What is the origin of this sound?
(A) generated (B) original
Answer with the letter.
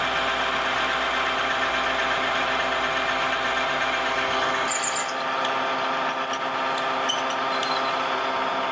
B